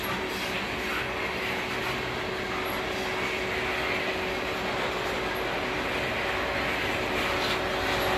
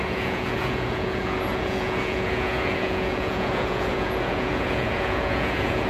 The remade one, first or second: second